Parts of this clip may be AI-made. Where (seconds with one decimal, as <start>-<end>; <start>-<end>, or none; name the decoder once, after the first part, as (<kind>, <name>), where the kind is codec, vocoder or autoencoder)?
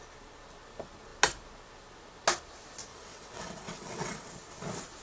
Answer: 2.9-4.3 (vocoder, WaveNeXt)